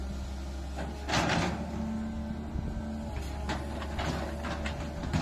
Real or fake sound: real